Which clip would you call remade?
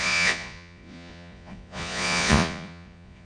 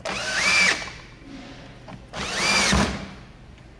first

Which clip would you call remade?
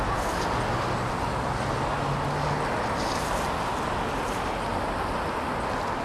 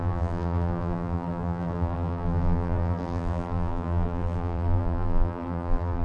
second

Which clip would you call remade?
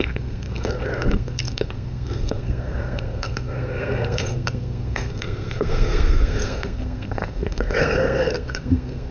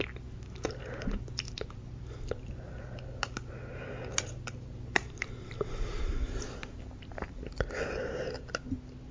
first